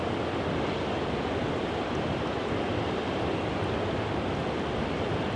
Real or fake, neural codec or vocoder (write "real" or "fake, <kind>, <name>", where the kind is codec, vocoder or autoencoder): real